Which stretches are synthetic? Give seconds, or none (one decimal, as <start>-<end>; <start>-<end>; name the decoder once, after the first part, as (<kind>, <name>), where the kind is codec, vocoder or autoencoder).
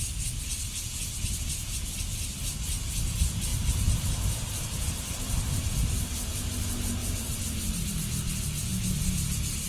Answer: 3.5-6.3 (vocoder, BigVGAN v2); 7.0-7.8